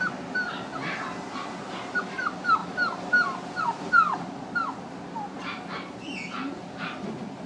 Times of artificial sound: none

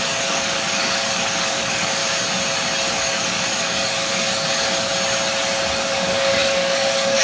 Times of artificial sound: 0.0-2.0; 2.9-4.9; 5.9-7.2

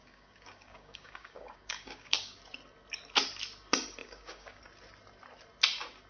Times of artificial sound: 0.0-2.4; 4.0-4.6

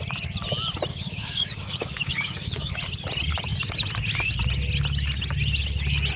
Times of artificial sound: 0.9-2.7

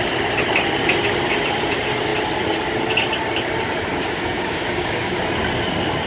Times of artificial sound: 3.9-5.2

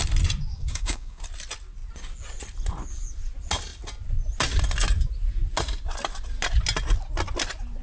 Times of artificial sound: 0.5-1.2